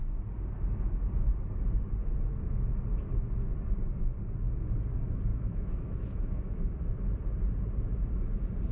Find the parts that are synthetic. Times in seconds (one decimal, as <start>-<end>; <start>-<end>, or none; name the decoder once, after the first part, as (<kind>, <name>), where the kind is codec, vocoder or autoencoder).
5.3-6.9 (autoencoder, DAC-VAE)